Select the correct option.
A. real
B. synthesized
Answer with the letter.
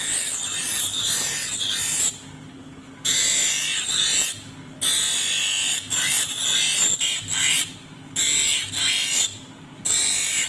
A